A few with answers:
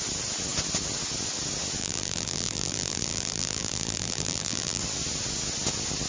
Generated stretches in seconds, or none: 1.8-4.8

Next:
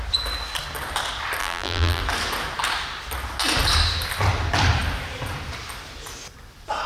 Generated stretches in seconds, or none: 1.4-2.0

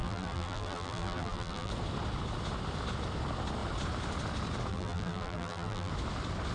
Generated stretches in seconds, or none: 0.0-1.7; 4.7-5.9

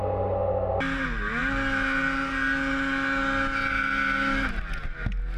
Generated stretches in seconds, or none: none